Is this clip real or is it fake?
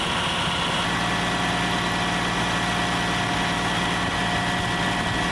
real